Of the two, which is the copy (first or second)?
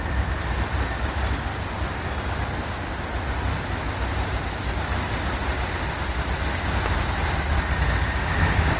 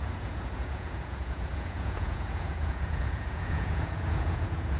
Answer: second